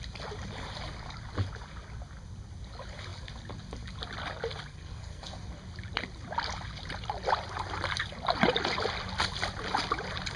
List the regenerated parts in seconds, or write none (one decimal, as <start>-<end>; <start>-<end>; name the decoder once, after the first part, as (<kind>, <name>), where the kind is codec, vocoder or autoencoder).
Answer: 4.7-5.5 (codec, SNAC)